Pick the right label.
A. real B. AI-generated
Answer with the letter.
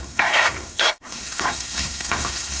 B